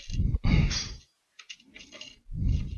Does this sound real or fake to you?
real